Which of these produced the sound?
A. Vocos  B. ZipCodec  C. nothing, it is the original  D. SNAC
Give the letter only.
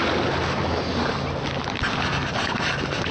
C